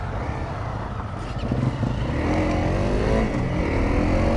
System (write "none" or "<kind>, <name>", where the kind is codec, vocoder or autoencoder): none